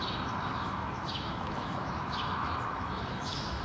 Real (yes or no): no